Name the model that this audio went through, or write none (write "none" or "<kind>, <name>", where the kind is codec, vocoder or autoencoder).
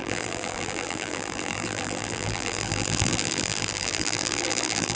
vocoder, BigVGAN v2